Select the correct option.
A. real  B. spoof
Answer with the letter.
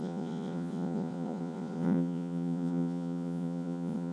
B